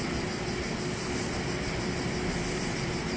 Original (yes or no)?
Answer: yes